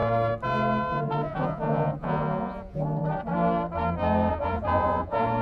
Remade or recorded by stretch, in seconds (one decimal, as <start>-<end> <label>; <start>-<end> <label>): 0.0-1.0 recorded; 1.0-3.0 remade; 3.0-4.3 recorded; 4.3-5.4 remade